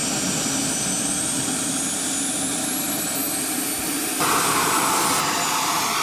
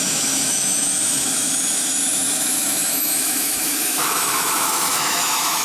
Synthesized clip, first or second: second